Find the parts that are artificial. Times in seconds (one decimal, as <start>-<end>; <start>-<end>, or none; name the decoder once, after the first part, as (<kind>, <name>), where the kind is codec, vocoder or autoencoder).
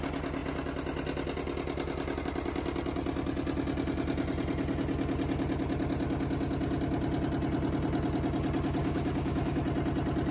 8.8-9.6 (codec, DAC)